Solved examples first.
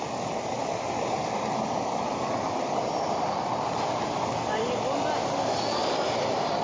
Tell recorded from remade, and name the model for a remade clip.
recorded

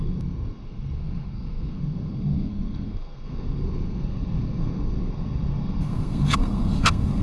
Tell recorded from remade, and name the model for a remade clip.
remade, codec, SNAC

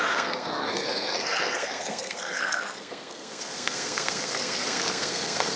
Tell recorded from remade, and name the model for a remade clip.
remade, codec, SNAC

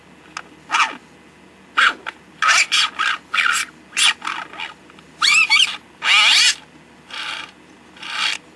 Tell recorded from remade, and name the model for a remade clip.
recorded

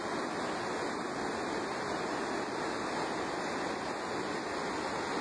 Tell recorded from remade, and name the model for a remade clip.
recorded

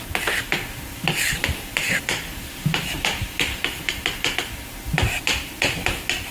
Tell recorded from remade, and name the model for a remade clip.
recorded